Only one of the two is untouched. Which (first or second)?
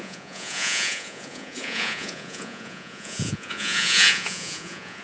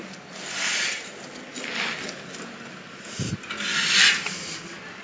second